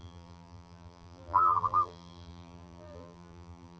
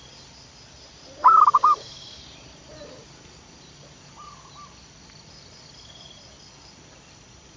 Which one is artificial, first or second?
first